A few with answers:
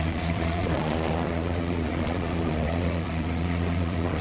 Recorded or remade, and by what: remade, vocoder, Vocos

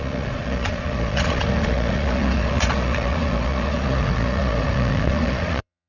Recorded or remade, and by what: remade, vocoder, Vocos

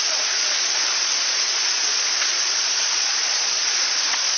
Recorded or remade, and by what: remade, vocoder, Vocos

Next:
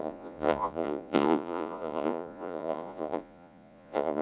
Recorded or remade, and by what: remade, vocoder, Vocos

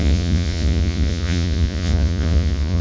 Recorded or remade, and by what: remade, vocoder, Vocos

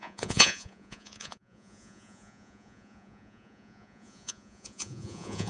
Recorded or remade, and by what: remade, vocoder, Vocos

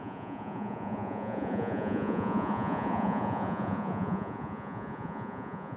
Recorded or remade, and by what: remade, vocoder, Vocos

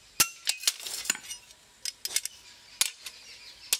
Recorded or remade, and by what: recorded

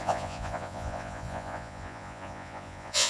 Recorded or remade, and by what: remade, vocoder, Vocos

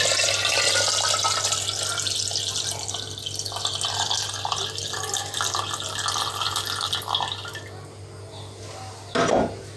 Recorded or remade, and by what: recorded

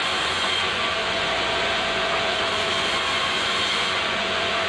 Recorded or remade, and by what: remade, vocoder, Vocos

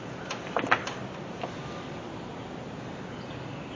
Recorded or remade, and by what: recorded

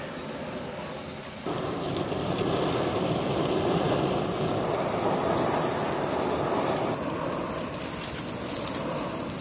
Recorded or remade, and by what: recorded